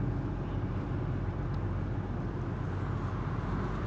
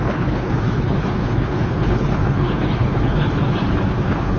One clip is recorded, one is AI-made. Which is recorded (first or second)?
first